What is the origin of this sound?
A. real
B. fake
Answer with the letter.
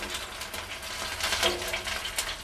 A